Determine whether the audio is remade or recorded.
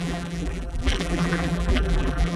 remade